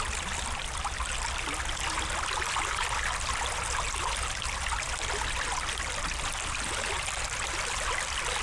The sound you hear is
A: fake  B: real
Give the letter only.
B